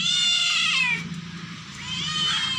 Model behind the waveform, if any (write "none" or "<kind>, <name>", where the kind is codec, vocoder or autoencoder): none